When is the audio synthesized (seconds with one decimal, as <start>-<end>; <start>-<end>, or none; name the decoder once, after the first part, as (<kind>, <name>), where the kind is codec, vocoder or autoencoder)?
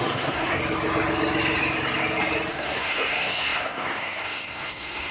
0.0-0.6 (codec, SNAC); 2.5-5.1